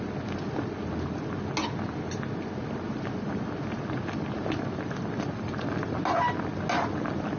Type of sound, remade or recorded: recorded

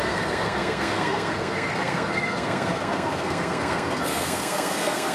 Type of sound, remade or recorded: remade